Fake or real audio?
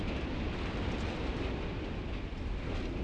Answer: real